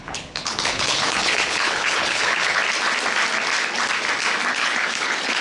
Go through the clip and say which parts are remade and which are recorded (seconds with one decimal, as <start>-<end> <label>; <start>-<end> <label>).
0.0-2.6 remade; 2.6-4.5 recorded; 4.5-5.4 remade